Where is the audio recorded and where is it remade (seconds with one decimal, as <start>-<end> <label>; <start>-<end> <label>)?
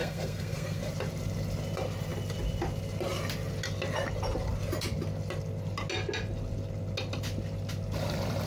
0.0-0.8 remade; 0.8-8.5 recorded